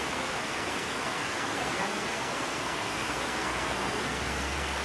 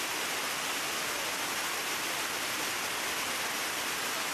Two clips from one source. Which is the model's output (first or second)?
first